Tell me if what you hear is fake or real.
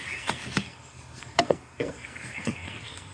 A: fake